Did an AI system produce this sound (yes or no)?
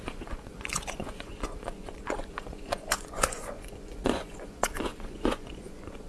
yes